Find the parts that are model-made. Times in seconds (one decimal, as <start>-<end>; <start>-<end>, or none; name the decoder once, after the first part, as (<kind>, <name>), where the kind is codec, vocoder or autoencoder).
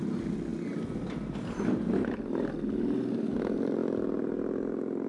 none